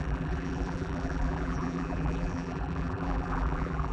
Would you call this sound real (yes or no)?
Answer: no